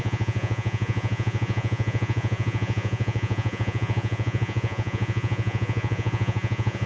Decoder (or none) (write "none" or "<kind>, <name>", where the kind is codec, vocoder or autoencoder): vocoder, Vocos